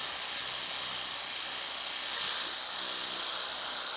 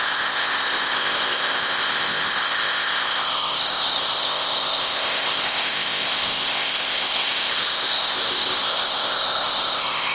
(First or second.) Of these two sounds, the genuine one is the first